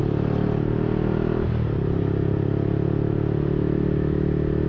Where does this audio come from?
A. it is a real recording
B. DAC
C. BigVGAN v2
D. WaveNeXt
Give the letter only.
A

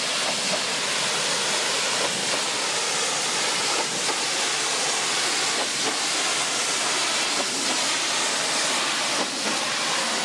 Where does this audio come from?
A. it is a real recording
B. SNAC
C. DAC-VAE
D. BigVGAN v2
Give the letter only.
A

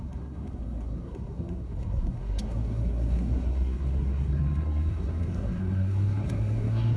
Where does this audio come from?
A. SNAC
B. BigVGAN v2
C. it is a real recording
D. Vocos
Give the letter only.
A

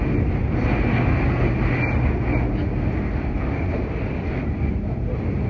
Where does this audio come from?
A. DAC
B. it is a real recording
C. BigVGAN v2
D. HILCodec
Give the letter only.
B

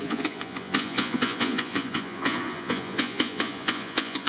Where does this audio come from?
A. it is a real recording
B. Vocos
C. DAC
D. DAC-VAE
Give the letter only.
B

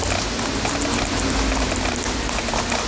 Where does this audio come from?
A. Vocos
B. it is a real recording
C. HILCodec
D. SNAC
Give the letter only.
B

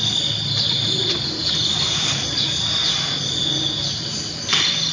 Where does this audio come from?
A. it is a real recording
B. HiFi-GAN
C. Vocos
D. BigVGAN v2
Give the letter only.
A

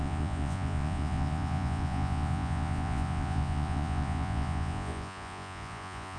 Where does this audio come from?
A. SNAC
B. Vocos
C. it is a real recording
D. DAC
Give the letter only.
B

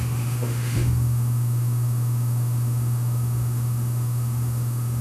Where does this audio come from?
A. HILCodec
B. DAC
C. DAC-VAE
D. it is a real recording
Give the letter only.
C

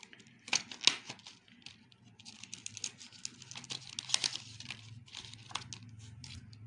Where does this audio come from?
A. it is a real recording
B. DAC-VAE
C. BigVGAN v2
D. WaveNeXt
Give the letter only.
A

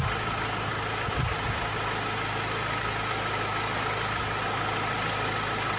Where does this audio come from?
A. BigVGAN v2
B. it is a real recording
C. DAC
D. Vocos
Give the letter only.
B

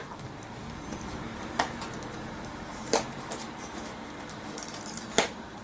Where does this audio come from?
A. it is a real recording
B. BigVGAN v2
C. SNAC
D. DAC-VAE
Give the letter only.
B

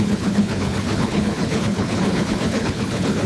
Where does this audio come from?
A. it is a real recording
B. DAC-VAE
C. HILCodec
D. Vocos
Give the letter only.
C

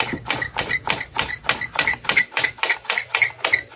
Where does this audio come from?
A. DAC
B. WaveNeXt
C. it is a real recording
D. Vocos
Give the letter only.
C